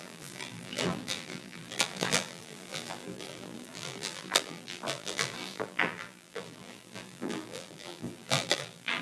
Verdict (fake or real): fake